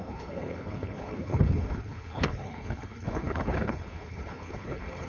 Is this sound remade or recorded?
remade